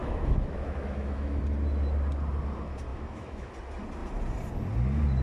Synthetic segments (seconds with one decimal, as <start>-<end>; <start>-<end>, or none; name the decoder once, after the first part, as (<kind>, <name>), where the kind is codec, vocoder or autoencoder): 0.0-1.4 (autoencoder, DAC-VAE); 2.9-3.5

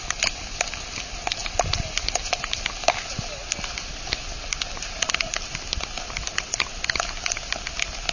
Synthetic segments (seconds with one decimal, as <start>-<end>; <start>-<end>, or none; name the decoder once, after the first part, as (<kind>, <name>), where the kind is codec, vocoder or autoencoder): none

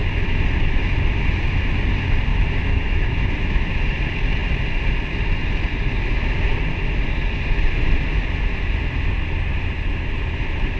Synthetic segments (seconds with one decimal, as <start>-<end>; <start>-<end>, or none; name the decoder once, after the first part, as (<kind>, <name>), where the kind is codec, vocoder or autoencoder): 2.3-3.7 (autoencoder, DAC-VAE)